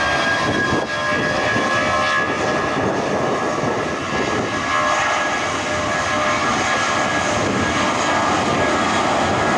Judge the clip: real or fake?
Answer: real